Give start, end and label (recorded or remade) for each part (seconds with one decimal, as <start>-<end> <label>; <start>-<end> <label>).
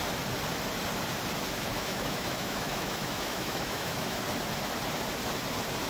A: 0.0-1.7 recorded; 1.7-4.2 remade; 4.2-5.9 recorded